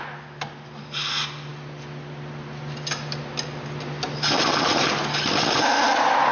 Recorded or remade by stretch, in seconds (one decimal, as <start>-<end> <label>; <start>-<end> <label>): 0.0-6.3 recorded